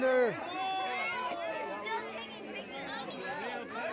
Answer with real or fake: real